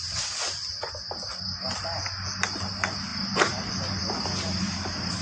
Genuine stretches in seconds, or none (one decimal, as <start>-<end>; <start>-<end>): 0.0-5.2

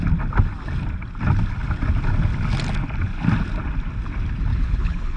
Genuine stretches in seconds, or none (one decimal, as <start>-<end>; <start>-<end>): 0.0-4.5

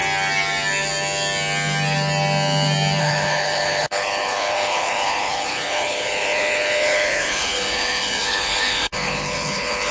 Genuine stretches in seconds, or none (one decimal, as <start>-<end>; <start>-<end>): 0.0-3.0

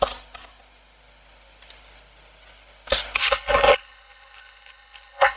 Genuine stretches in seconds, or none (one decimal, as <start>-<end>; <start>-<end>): 0.0-3.2

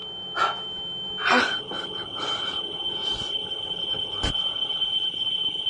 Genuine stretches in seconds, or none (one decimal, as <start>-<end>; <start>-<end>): 0.0-1.4

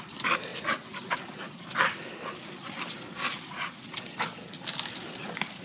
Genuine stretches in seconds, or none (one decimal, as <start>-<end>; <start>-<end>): 0.0-5.6

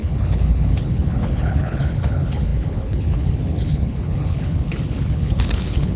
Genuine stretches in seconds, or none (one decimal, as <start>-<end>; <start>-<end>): none

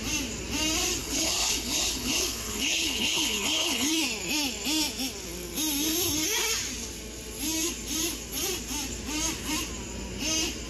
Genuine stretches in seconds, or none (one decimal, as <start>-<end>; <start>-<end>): 0.0-1.0; 3.9-10.7